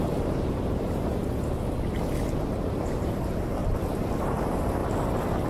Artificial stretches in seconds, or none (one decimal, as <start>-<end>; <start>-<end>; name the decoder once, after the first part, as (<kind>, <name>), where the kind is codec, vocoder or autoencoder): 0.0-1.1 (vocoder, BigVGAN v2); 2.4-3.6; 4.2-4.8